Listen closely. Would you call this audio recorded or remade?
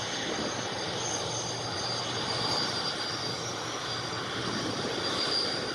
recorded